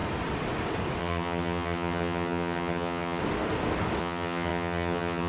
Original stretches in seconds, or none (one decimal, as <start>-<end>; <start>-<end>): 0.0-1.0; 3.2-4.0